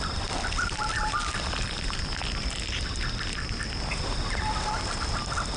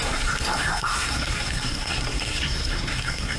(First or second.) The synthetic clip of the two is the second